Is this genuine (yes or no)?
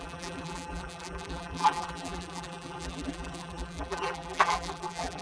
no